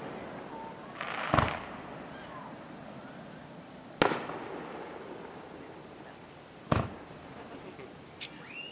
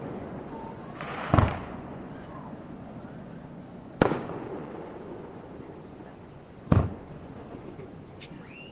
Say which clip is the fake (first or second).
second